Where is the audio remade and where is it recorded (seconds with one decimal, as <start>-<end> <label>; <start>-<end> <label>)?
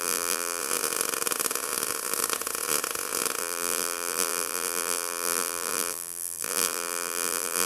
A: 0.0-0.6 remade; 0.6-3.4 recorded; 3.4-7.7 remade